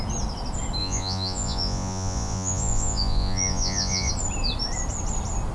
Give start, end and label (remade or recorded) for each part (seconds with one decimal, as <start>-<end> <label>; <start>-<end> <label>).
0.0-0.8 recorded; 0.8-4.1 remade; 4.1-5.5 recorded